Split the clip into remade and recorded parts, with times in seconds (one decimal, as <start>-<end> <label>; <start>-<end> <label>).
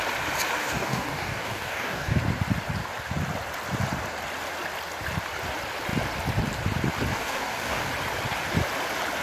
0.0-0.6 recorded; 0.6-2.2 remade; 2.2-7.1 recorded; 7.1-7.9 remade; 7.9-9.2 recorded